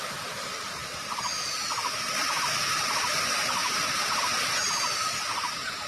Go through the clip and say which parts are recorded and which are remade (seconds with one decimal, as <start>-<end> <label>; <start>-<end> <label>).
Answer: 0.0-5.9 remade